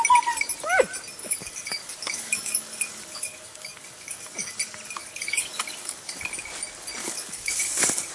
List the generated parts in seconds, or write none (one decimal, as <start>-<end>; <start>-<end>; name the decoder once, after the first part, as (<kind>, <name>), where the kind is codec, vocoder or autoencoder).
1.2-4.5 (codec, DAC); 5.0-6.5; 7.0-8.1